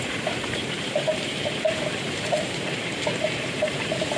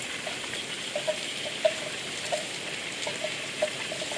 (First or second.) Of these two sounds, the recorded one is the second